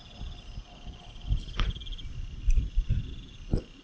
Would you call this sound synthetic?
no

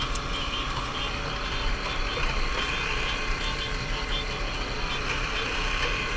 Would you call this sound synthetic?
no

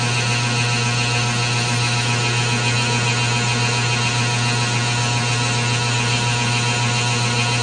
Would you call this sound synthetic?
no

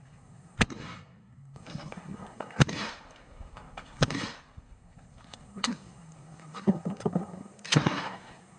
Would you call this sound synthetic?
yes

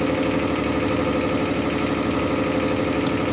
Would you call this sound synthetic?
no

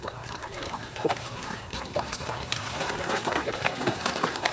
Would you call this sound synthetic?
yes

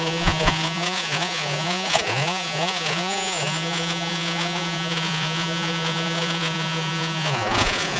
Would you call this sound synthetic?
yes